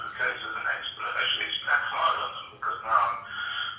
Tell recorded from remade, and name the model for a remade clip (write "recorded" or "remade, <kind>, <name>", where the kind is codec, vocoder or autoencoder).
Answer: recorded